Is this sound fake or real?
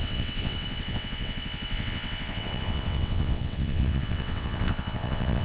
fake